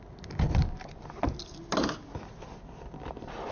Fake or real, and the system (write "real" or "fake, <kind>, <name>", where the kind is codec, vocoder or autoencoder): real